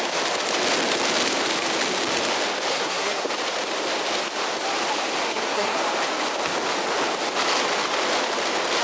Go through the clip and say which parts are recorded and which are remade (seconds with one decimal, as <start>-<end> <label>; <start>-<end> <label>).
0.0-2.7 recorded; 2.7-3.3 remade; 3.3-5.3 recorded; 5.3-5.8 remade; 5.8-8.8 recorded